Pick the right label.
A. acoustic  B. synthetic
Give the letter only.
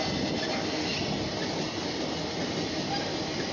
A